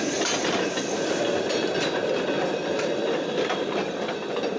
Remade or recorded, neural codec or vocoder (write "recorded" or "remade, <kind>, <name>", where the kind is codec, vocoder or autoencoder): recorded